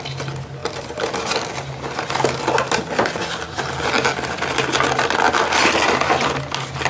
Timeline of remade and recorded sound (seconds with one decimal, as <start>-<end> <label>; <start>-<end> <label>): 0.0-6.9 recorded